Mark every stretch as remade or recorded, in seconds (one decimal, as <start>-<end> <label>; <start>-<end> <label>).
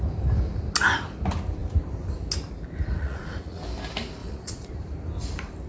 0.0-2.9 recorded; 2.9-3.6 remade; 3.6-4.2 recorded; 4.2-4.7 remade; 4.7-5.7 recorded